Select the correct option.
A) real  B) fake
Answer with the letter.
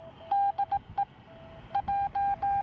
A